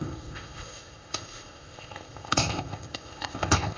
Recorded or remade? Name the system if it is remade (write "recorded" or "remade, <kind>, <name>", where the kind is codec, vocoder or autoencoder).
remade, codec, ZipCodec